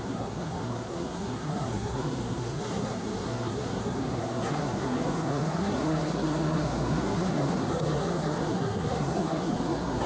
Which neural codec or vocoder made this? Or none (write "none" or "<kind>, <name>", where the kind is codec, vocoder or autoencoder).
codec, SNAC